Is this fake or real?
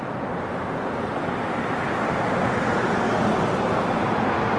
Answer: real